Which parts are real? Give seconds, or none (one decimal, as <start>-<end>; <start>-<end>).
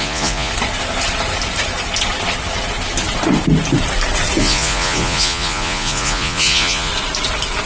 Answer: 0.5-4.4; 6.9-7.7